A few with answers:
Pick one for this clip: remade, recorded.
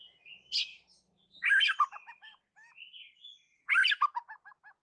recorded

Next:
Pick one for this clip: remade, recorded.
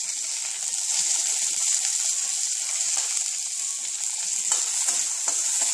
recorded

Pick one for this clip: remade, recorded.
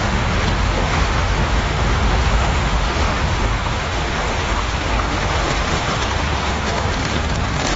remade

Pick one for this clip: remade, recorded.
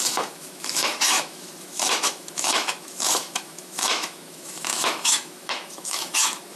remade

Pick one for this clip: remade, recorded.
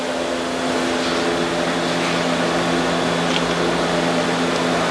recorded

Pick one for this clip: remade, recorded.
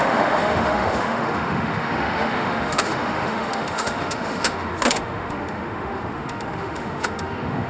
remade